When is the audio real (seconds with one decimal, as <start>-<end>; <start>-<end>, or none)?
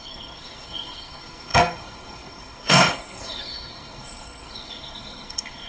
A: none